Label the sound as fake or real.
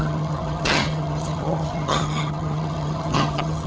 fake